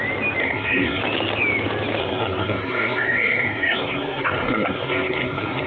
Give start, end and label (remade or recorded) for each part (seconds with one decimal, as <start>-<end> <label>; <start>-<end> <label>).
0.0-0.4 recorded; 0.4-1.0 remade; 1.0-2.0 recorded; 2.0-5.7 remade